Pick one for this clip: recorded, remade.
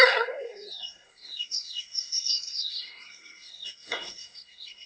remade